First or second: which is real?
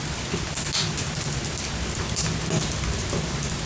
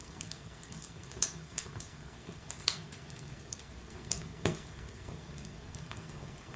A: first